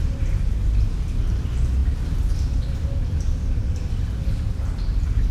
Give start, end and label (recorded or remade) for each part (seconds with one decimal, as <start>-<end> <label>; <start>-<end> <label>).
0.0-5.3 recorded